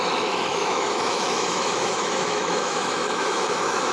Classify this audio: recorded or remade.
remade